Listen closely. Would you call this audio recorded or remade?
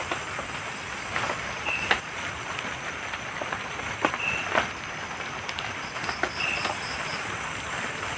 remade